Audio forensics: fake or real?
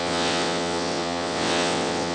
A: fake